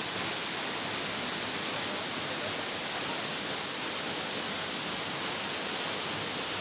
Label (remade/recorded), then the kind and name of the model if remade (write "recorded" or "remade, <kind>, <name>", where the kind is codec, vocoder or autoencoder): recorded